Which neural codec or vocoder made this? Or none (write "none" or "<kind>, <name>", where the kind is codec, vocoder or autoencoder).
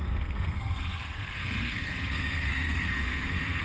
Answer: codec, SNAC